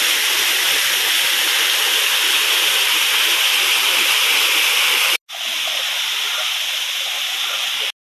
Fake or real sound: real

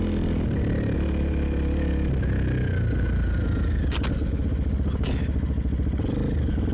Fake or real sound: real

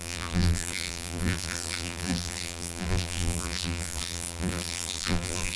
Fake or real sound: fake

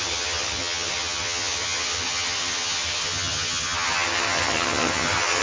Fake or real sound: fake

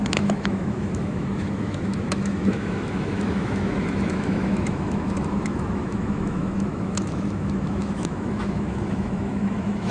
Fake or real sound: fake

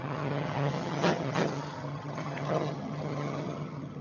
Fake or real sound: fake